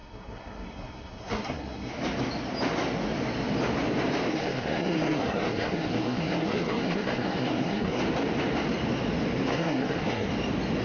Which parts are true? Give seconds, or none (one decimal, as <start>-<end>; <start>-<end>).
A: 1.9-4.3; 8.0-9.5; 10.3-10.8